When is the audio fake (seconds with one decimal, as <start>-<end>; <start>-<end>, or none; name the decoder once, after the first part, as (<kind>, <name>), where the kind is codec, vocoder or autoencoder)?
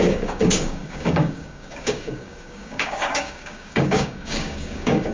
0.0-5.1 (codec, DAC)